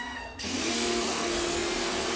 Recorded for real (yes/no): no